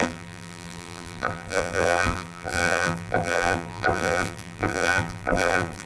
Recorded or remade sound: remade